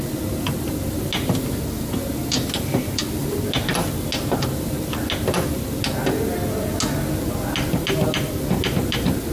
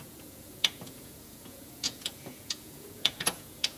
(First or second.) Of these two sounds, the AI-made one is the second